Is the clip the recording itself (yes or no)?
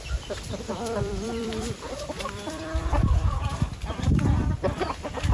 no